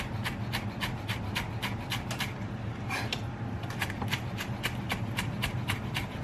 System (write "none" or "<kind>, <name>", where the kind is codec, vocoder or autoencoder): none